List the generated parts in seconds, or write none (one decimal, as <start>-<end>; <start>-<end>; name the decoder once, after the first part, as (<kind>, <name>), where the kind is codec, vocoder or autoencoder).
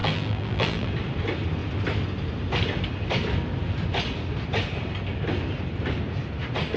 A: 0.0-0.9 (vocoder, BigVGAN v2)